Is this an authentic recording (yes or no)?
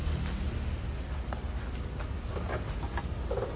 yes